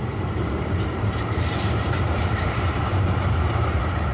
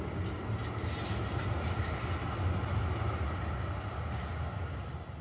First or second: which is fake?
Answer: first